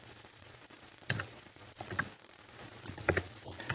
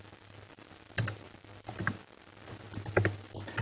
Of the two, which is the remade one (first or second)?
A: first